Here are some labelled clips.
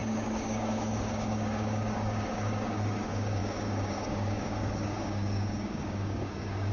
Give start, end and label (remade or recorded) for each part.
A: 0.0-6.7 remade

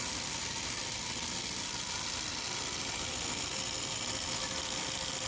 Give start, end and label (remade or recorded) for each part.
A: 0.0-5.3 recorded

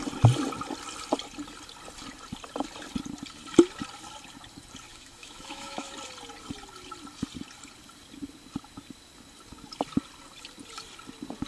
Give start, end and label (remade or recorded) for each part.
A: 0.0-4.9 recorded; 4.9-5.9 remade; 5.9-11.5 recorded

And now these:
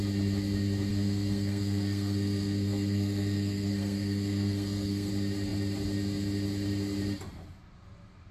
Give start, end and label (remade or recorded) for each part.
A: 0.0-0.9 recorded; 0.9-5.1 remade; 5.1-8.3 recorded

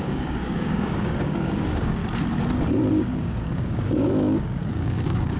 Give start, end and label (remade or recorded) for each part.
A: 0.0-2.0 remade; 2.0-2.9 recorded; 2.9-5.4 remade

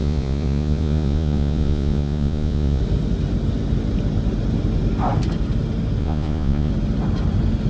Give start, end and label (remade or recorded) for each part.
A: 0.0-2.8 remade; 2.8-6.0 recorded; 6.0-6.7 remade; 6.7-7.7 recorded

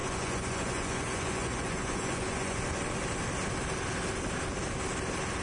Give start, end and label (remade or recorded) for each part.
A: 0.0-2.6 remade; 2.6-5.4 recorded

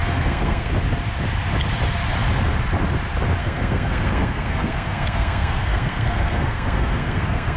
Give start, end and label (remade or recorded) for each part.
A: 0.0-0.7 remade; 0.7-3.4 recorded; 3.4-7.6 remade